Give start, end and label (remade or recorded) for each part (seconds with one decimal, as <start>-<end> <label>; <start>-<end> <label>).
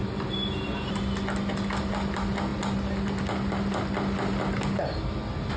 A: 0.0-5.6 recorded